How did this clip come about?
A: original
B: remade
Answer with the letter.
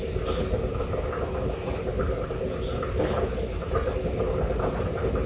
A